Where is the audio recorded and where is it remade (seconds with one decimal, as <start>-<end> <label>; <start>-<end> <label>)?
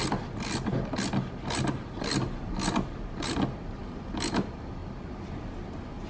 0.0-6.1 recorded